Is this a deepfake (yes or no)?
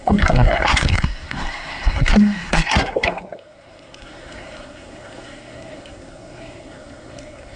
yes